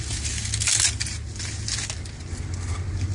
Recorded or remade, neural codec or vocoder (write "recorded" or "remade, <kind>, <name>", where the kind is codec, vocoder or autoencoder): recorded